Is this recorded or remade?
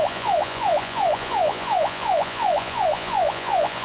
remade